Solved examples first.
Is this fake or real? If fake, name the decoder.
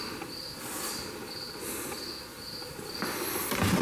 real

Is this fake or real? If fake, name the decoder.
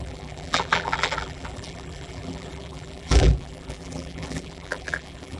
fake, vocoder, BigVGAN v2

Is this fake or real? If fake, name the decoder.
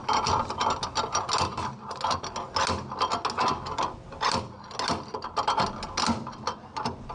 real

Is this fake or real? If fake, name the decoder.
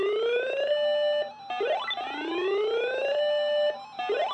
real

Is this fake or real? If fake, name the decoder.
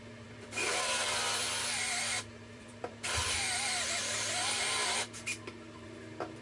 fake, vocoder, BigVGAN v2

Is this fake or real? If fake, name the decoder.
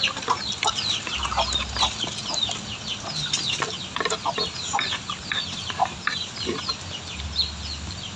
real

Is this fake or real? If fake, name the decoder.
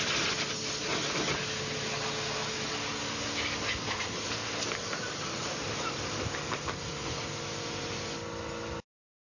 real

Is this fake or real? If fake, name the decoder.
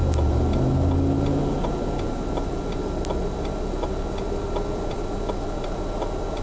real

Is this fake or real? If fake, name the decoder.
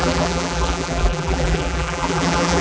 fake, vocoder, BigVGAN v2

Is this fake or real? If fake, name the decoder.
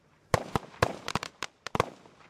fake, vocoder, BigVGAN v2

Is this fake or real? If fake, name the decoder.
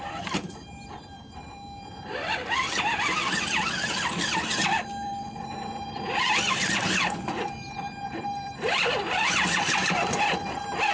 fake, vocoder, BigVGAN v2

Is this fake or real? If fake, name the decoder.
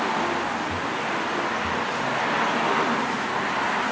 fake, vocoder, BigVGAN v2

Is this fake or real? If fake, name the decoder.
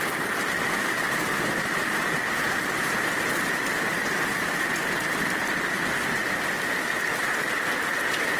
real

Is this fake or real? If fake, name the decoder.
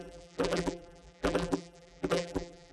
fake, vocoder, BigVGAN v2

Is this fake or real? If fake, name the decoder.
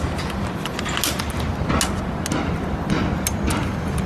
real